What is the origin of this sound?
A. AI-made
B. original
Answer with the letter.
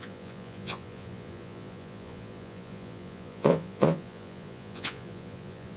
A